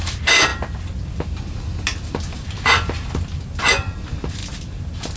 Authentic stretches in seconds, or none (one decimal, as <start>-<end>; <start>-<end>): 0.0-5.2